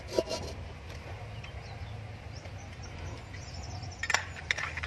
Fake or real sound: real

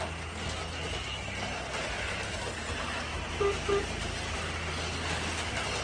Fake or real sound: real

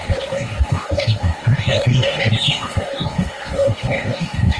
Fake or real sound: fake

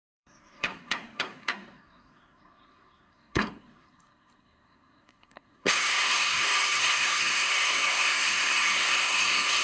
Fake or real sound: fake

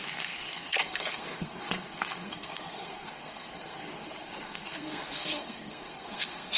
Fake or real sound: fake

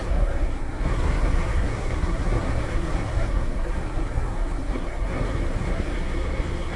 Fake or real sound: fake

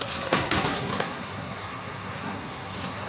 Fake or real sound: fake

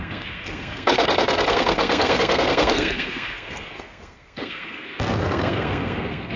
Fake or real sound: fake